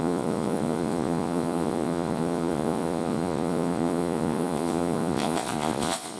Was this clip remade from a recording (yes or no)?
yes